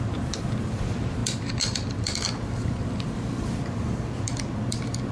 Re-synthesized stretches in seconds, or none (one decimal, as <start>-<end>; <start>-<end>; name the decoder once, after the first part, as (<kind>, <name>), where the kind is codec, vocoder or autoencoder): 0.0-5.1 (vocoder, BigVGAN v2)